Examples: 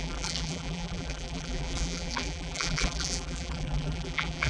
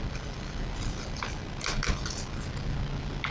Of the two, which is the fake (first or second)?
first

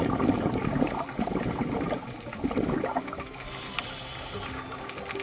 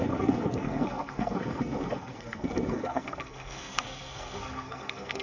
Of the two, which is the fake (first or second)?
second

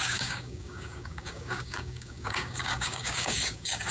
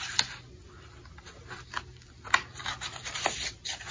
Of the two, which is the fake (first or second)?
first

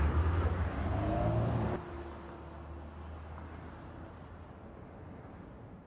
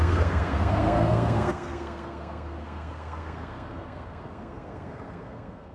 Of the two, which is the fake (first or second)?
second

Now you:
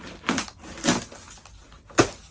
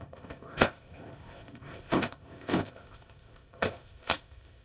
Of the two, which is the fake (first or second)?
second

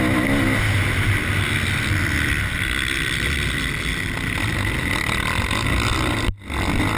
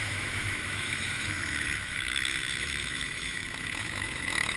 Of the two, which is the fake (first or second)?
second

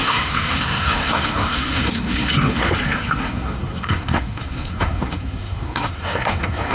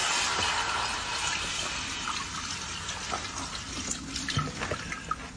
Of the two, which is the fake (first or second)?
first